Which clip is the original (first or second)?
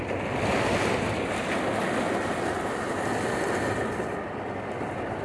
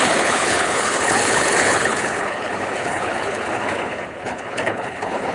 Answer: first